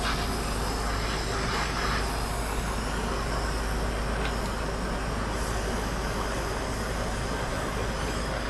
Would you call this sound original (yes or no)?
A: yes